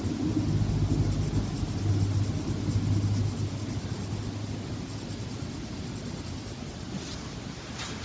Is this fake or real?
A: real